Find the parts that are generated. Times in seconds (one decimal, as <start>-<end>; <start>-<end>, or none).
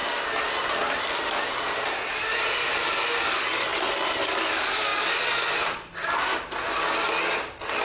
none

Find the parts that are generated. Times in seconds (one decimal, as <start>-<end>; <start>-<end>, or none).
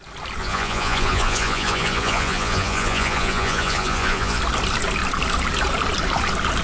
0.4-4.4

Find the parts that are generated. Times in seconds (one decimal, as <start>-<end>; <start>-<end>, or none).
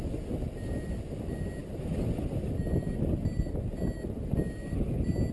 none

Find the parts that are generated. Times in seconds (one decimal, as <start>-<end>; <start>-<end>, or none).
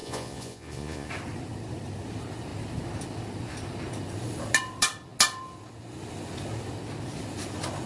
0.0-1.1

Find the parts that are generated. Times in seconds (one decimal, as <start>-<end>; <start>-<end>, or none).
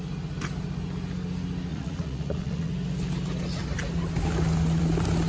1.7-2.7